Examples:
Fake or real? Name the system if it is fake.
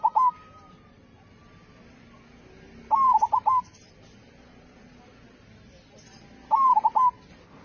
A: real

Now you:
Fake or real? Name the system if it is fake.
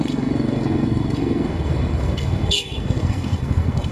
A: fake, codec, SNAC